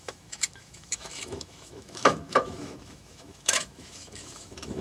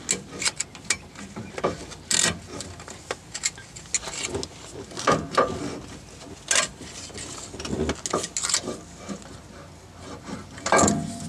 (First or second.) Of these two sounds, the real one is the second